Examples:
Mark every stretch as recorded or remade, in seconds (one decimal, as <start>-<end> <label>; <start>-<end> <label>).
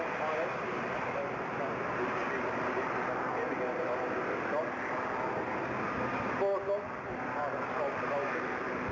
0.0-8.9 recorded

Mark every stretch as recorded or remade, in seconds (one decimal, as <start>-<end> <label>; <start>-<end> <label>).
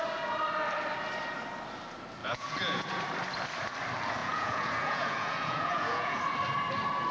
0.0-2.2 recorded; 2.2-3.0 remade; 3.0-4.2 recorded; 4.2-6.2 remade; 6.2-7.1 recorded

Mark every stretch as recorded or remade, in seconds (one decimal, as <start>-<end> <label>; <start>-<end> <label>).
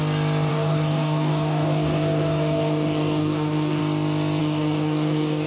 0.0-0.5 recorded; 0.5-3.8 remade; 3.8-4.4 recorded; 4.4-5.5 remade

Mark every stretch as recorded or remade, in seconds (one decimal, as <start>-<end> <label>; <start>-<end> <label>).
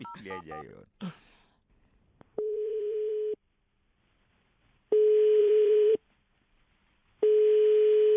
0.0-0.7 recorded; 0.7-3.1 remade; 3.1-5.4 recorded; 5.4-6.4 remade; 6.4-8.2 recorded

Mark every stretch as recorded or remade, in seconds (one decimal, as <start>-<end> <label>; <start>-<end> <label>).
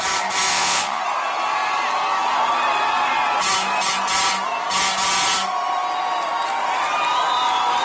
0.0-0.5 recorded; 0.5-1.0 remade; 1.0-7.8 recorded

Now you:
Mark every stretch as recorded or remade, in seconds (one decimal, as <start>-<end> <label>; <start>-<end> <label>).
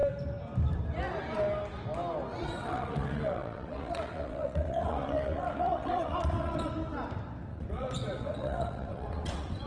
0.0-2.3 recorded; 2.3-6.7 remade; 6.7-7.5 recorded; 7.5-9.7 remade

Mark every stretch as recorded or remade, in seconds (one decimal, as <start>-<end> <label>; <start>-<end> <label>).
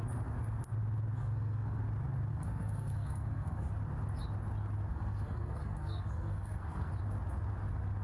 0.0-1.2 recorded; 1.2-1.8 remade; 1.8-2.3 recorded; 2.3-3.7 remade; 3.7-4.9 recorded; 4.9-6.9 remade; 6.9-8.0 recorded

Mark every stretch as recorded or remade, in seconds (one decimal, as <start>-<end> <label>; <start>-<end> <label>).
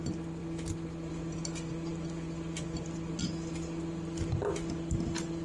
0.0-5.4 recorded